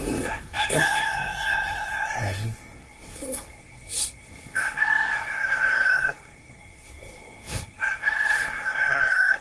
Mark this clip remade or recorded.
remade